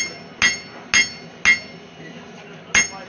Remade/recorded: recorded